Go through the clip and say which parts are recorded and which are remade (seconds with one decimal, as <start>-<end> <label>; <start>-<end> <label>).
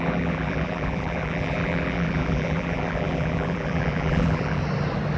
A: 0.0-4.6 remade; 4.6-5.2 recorded